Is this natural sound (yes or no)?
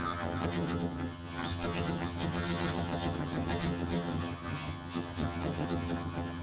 no